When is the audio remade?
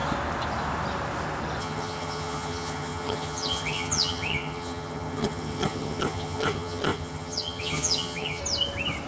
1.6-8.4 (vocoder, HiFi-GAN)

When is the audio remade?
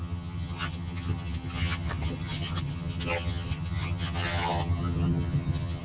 0.0-5.8 (vocoder, HiFi-GAN)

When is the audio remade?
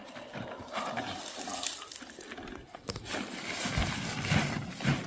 none